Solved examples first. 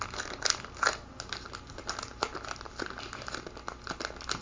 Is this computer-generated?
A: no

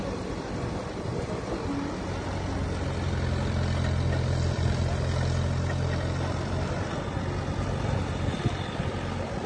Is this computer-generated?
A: no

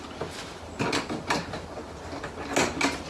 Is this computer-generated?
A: no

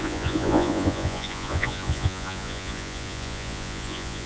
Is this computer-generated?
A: yes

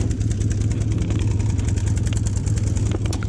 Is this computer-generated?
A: no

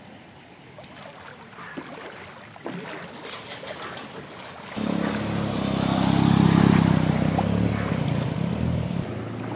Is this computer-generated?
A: no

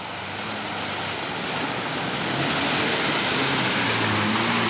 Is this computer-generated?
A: no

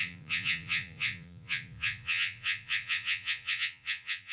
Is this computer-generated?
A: yes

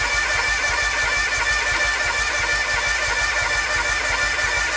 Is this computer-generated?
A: no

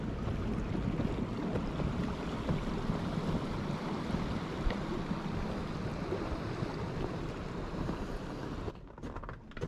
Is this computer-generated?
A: no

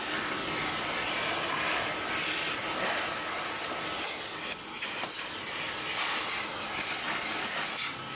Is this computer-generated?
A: no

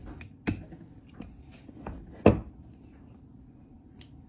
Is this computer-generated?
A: no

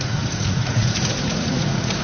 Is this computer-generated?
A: yes